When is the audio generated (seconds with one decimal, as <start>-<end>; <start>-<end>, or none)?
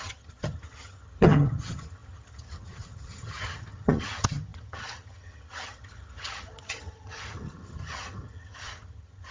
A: 0.0-9.3